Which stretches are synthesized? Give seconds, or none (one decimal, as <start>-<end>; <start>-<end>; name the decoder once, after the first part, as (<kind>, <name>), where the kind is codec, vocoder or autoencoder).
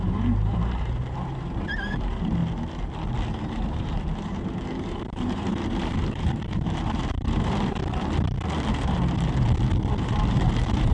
0.0-2.4 (vocoder, BigVGAN v2); 3.4-7.8; 10.1-10.9